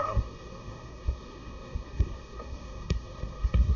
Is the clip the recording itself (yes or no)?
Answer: no